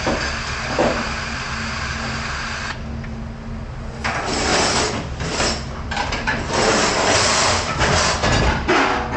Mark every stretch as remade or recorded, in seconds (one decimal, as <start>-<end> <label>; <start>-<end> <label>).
0.0-4.5 recorded; 4.5-8.4 remade; 8.4-9.2 recorded